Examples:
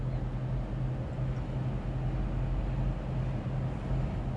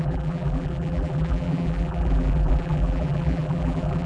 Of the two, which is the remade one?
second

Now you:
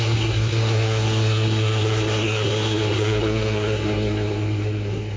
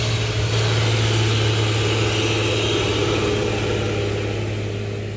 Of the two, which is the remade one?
first